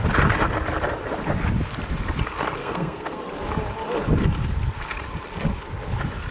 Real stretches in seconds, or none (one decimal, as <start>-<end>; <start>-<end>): 0.0-2.6; 3.2-6.3